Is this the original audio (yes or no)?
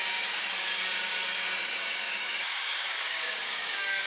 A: no